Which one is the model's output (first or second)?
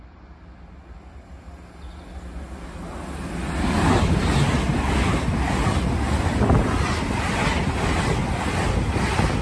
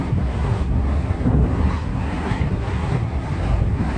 second